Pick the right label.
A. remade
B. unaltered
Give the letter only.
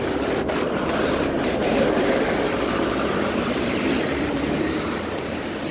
A